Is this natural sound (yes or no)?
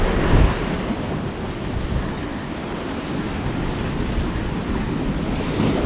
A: yes